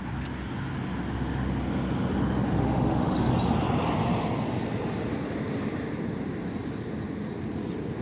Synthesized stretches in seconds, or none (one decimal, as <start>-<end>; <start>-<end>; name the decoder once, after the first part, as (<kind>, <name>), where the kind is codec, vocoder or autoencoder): 2.6-3.3 (autoencoder, DAC-VAE)